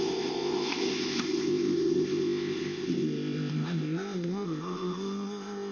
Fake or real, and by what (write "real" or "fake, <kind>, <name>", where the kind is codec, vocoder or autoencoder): fake, codec, ZipCodec